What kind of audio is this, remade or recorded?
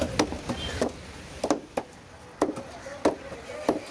recorded